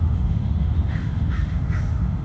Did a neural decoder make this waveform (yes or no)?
yes